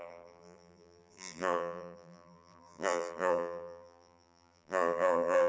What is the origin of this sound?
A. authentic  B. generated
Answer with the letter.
B